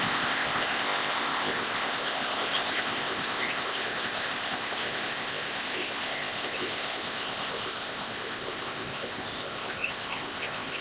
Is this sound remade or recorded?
remade